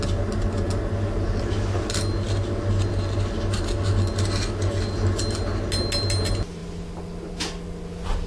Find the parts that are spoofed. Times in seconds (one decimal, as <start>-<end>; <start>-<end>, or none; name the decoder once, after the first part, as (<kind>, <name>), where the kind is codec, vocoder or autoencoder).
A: none

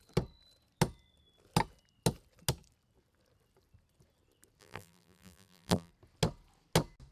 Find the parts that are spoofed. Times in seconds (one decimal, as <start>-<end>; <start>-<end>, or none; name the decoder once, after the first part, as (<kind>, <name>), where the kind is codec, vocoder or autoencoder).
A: 4.6-5.9 (vocoder, BigVGAN v2)

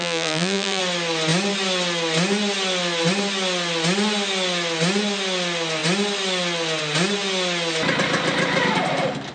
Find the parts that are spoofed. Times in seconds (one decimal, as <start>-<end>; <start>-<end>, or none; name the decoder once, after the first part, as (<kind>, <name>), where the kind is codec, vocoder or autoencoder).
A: 0.0-0.8 (vocoder, BigVGAN v2)

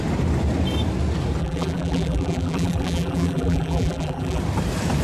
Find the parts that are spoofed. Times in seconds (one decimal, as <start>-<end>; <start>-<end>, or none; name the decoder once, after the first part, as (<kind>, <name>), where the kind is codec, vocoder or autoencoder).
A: 1.4-4.4 (vocoder, BigVGAN v2)

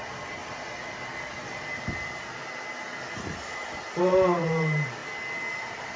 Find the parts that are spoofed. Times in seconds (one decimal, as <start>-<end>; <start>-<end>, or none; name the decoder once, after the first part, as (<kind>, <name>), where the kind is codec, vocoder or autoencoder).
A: 0.0-0.4 (vocoder, BigVGAN v2); 4.0-5.0; 5.6-6.0

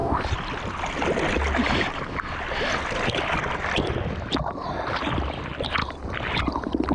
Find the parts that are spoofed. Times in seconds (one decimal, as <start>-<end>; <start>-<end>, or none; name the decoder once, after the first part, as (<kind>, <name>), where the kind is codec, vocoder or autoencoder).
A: 0.0-4.1 (vocoder, BigVGAN v2)

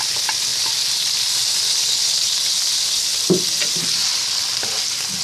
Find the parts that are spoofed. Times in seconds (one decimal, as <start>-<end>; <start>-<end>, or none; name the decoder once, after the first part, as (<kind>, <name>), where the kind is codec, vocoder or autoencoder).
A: none